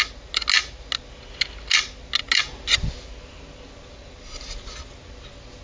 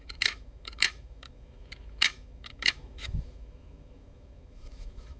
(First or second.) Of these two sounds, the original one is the first